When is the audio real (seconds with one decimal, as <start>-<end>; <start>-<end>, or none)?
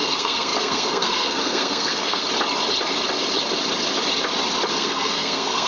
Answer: 2.2-4.7